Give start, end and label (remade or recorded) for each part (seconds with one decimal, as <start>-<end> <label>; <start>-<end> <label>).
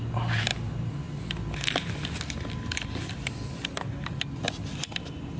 0.0-5.4 recorded